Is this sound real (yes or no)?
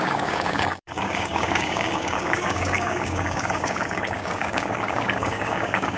no